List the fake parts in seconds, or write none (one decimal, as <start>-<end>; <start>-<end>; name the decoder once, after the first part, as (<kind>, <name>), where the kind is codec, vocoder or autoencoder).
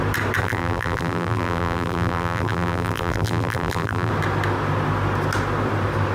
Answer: 0.4-4.1 (vocoder, BigVGAN v2)